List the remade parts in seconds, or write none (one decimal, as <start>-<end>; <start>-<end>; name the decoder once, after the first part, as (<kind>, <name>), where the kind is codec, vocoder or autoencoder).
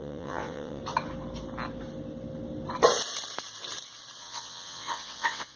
0.0-0.8 (vocoder, WaveNeXt); 4.2-5.6